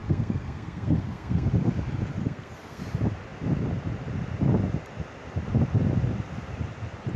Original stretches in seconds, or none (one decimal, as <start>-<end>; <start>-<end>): 1.5-2.2; 2.8-7.2